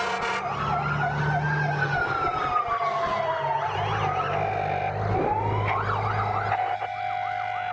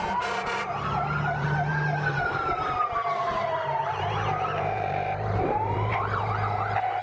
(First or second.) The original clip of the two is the first